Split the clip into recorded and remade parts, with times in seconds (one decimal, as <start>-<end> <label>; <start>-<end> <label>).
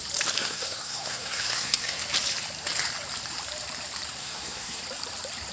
0.0-0.4 recorded; 0.4-2.0 remade; 2.0-4.2 recorded; 4.2-4.8 remade; 4.8-5.5 recorded